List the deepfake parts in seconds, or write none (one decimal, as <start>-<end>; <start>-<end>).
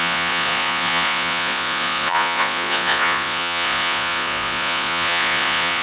0.0-5.8